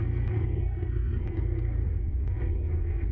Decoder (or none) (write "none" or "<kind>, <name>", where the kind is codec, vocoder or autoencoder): codec, SNAC